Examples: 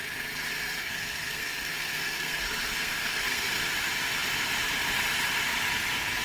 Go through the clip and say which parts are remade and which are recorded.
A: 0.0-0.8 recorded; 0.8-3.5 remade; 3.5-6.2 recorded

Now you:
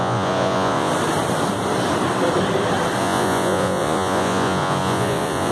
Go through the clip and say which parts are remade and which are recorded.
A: 0.0-0.9 remade; 0.9-3.0 recorded; 3.0-5.5 remade

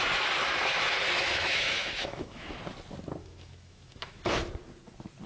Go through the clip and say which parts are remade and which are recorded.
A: 0.0-1.2 recorded; 1.2-2.6 remade; 2.6-3.2 recorded; 3.2-4.5 remade; 4.5-5.3 recorded

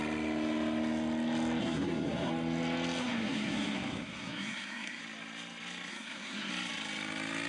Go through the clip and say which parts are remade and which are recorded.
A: 0.0-1.6 recorded; 1.6-2.3 remade; 2.3-3.0 recorded; 3.0-5.0 remade; 5.0-5.9 recorded; 5.9-6.5 remade; 6.5-7.5 recorded

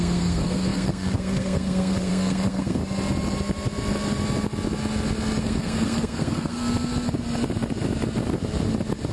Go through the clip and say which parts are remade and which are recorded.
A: 0.0-2.8 remade; 2.8-5.4 recorded; 5.4-6.6 remade; 6.6-9.1 recorded

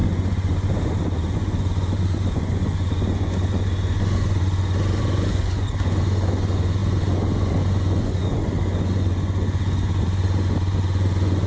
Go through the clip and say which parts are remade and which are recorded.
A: 0.0-11.5 remade